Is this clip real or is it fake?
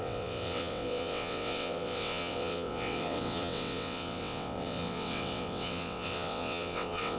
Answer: fake